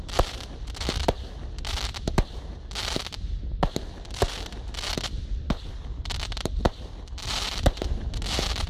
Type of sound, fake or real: real